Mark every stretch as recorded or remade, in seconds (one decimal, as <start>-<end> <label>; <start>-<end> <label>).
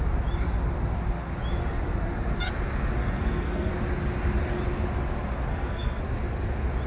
0.0-3.0 recorded; 3.0-3.7 remade; 3.7-5.5 recorded; 5.5-6.0 remade; 6.0-6.9 recorded